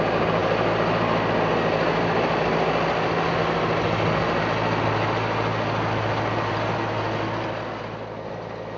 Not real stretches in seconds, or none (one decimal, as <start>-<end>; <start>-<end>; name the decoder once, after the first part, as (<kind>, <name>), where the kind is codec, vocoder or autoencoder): none